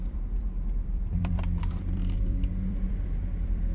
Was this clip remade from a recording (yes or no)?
yes